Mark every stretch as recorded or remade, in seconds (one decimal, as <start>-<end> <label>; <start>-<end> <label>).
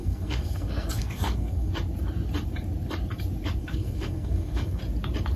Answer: 0.0-1.7 remade; 1.7-3.6 recorded; 3.6-4.8 remade; 4.8-5.4 recorded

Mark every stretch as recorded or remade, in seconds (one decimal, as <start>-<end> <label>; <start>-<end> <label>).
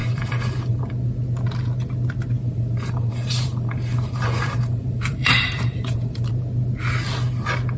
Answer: 0.0-0.8 remade; 0.8-2.4 recorded; 2.4-6.3 remade; 6.3-7.8 recorded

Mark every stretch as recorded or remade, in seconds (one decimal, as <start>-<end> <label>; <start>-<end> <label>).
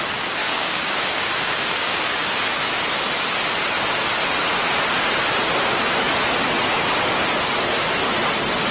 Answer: 0.0-0.4 recorded; 0.4-2.4 remade; 2.4-8.7 recorded